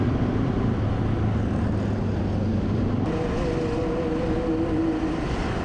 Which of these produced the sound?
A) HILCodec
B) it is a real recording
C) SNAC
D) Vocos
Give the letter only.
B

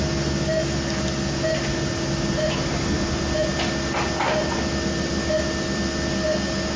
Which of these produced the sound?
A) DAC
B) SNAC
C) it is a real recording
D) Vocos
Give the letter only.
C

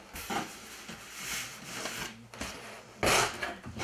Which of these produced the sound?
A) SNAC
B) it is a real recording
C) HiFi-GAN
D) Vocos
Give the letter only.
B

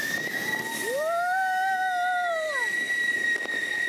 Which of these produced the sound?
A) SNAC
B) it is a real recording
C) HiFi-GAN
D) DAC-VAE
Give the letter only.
B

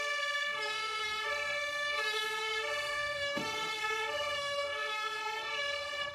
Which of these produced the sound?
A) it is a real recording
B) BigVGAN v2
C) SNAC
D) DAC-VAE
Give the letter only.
C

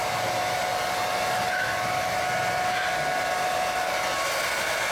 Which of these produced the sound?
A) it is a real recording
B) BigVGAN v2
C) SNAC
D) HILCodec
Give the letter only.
A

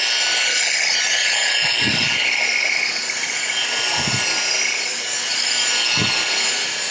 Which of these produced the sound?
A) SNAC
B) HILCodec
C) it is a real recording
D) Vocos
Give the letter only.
C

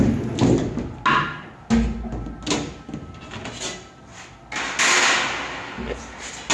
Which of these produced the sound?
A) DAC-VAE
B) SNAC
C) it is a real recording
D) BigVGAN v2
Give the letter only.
C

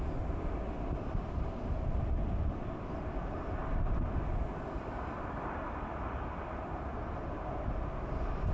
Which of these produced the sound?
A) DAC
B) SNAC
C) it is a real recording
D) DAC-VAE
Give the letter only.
C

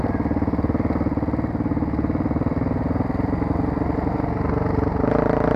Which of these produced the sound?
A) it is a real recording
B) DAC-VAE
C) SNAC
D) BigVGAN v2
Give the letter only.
A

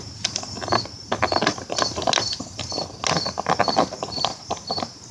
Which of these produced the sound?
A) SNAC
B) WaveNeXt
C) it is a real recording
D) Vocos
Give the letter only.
C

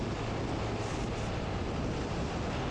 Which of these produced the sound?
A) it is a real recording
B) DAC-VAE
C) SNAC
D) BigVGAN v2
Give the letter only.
A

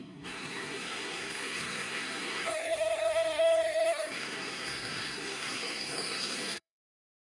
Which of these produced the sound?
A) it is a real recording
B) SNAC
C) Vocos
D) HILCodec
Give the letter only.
B